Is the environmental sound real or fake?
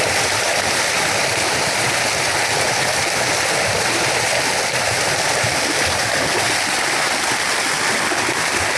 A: real